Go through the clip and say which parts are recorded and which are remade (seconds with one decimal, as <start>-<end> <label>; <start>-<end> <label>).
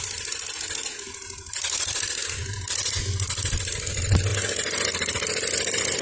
0.0-0.8 recorded; 0.8-3.0 remade; 3.0-4.3 recorded; 4.3-5.5 remade; 5.5-6.0 recorded